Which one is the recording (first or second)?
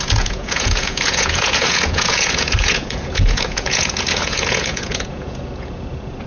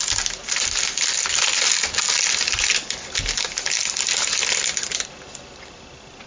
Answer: second